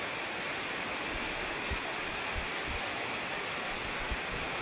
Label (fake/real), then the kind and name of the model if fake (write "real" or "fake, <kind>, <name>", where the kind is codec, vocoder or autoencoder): real